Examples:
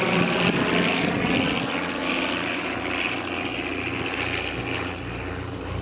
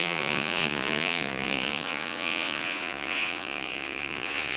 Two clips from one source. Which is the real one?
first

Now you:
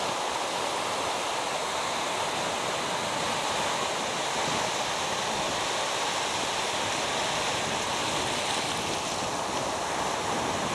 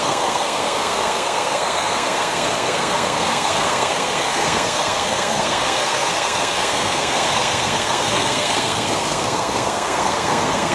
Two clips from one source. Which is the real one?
first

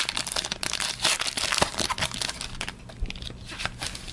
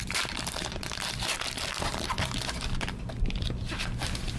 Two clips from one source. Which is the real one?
first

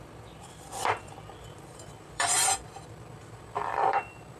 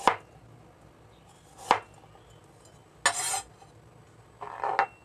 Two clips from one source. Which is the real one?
second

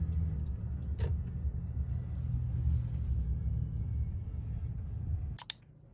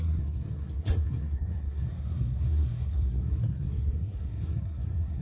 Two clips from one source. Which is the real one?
first